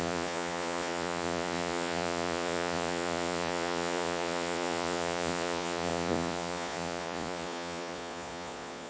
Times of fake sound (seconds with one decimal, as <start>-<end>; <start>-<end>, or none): 0.0-8.9